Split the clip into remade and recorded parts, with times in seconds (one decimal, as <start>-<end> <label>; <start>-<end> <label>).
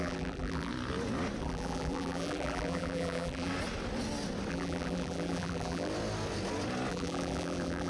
0.0-0.7 remade; 0.7-1.4 recorded; 1.4-3.5 remade; 3.5-4.5 recorded; 4.5-5.9 remade; 5.9-6.9 recorded; 6.9-7.9 remade